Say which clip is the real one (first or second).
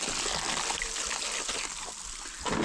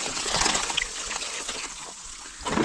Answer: first